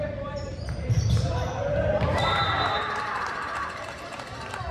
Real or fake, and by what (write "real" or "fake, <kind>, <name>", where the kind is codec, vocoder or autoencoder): fake, vocoder, BigVGAN v2